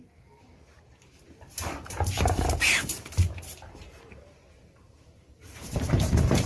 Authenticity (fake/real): fake